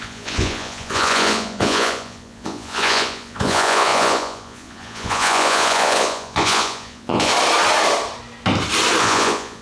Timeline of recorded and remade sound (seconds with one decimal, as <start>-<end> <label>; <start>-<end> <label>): 0.0-7.3 remade; 7.3-9.0 recorded; 9.0-9.6 remade